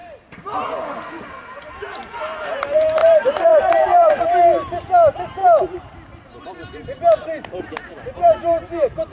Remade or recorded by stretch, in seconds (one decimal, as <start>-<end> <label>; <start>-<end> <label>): 0.0-3.0 recorded; 3.0-4.2 remade; 4.2-9.1 recorded